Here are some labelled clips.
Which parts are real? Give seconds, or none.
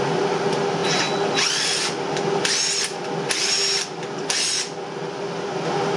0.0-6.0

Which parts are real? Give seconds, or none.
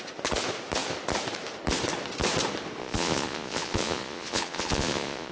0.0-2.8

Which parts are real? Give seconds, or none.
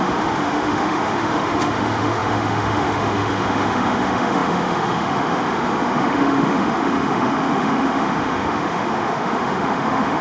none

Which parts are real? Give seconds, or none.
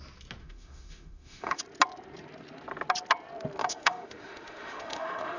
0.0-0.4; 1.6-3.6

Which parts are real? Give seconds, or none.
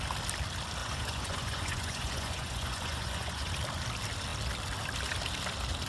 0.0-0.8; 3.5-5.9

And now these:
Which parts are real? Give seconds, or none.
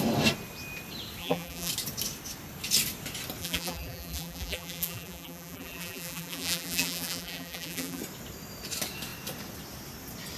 0.0-1.2; 1.7-3.4; 8.0-10.4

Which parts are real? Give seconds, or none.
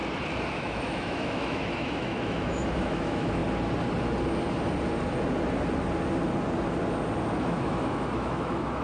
0.0-0.5; 3.4-7.4